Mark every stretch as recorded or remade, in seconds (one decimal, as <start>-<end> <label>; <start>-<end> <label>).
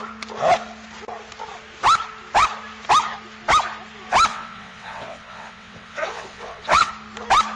0.0-4.3 recorded; 4.3-6.9 remade; 6.9-7.6 recorded